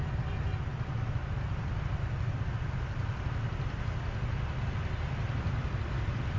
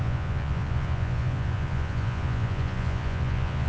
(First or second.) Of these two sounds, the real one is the first